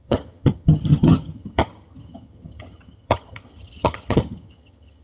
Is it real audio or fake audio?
fake